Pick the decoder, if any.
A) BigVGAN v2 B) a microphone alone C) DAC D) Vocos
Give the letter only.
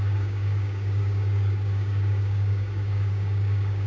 C